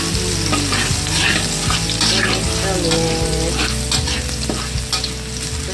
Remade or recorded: recorded